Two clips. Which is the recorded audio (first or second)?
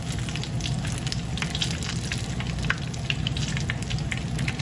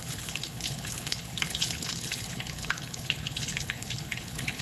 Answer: first